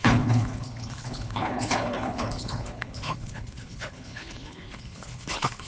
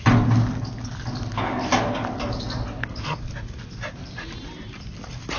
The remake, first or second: first